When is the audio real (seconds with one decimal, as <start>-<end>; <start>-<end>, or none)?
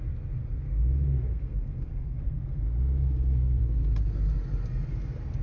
0.0-0.4; 3.6-5.4